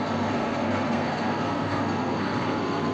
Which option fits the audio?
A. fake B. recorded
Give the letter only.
A